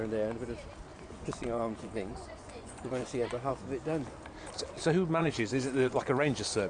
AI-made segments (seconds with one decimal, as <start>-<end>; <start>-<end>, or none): 0.9-3.5; 5.2-6.0